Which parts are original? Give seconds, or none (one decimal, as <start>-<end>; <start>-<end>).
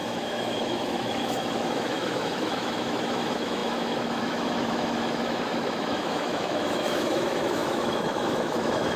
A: none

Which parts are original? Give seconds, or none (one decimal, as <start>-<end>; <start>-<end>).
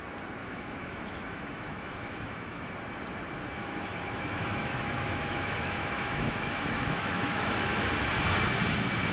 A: 0.0-0.4; 2.7-3.6; 7.8-9.1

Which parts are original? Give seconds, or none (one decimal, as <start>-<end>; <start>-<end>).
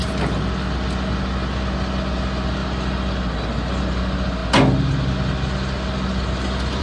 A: 0.0-6.8